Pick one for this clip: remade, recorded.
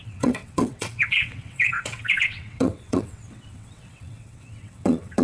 remade